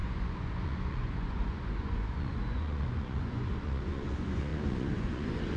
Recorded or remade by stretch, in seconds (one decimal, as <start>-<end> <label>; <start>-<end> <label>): 0.0-5.6 remade